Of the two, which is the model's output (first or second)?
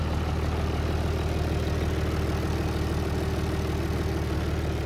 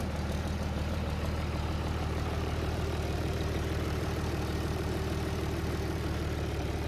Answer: second